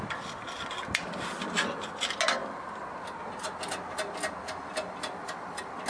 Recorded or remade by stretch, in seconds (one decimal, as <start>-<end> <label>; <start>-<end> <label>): 0.0-5.9 recorded